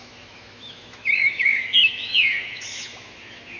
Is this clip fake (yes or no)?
yes